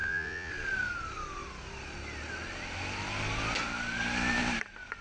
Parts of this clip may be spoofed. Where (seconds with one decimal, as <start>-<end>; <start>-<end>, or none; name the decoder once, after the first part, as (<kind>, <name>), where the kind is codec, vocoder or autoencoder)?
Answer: 0.0-0.5 (vocoder, Vocos)